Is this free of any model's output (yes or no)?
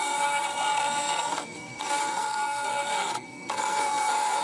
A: no